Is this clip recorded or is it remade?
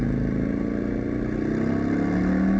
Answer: recorded